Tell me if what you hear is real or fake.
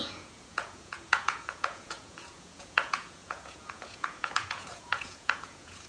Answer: fake